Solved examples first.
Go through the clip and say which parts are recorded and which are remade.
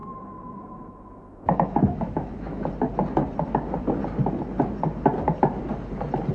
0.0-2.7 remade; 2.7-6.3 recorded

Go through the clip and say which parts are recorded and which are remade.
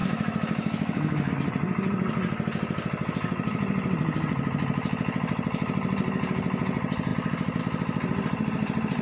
0.0-1.3 remade; 1.3-9.0 recorded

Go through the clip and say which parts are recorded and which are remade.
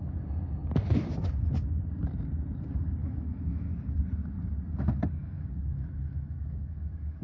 0.0-3.0 recorded; 3.0-4.0 remade; 4.0-5.2 recorded; 5.2-7.2 remade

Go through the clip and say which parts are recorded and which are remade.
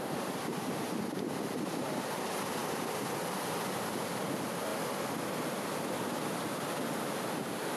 0.0-7.8 recorded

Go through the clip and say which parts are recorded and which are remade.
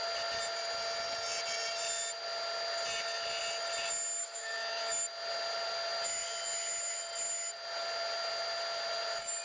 0.0-4.2 recorded; 4.2-4.9 remade; 4.9-9.4 recorded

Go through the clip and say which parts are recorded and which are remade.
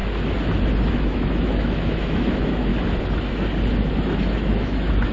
0.0-0.9 recorded; 0.9-2.7 remade; 2.7-4.0 recorded; 4.0-5.1 remade